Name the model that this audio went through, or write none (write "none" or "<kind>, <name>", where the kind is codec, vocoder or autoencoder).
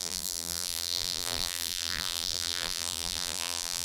vocoder, BigVGAN v2